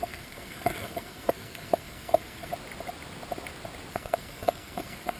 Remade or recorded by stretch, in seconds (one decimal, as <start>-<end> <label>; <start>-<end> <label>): 0.0-2.5 remade; 2.5-3.9 recorded; 3.9-5.2 remade